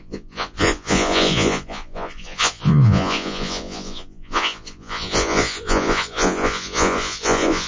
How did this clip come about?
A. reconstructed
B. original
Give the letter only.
A